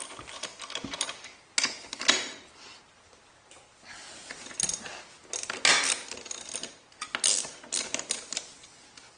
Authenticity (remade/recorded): recorded